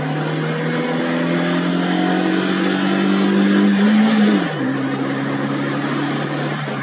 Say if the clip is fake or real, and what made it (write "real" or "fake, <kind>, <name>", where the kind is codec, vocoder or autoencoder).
real